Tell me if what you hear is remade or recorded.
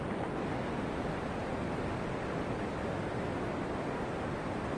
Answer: recorded